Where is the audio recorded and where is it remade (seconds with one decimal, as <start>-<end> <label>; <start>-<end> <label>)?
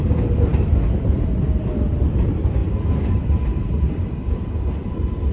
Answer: 0.0-5.3 recorded